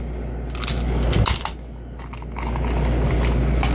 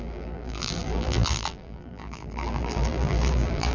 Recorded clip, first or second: first